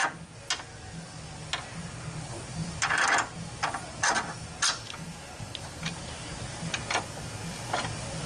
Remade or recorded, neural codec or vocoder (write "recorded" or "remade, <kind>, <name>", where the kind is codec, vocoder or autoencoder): recorded